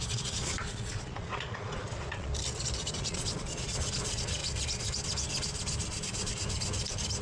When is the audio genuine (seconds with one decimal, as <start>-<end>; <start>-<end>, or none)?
2.3-2.9; 4.4-7.2